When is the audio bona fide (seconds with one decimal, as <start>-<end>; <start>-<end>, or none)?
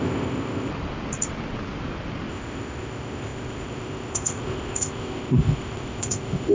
0.7-2.3